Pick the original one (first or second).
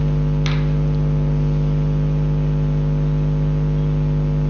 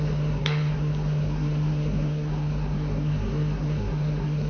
first